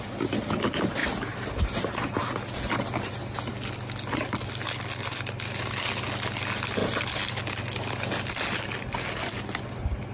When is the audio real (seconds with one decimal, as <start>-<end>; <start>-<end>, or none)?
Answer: 0.0-10.1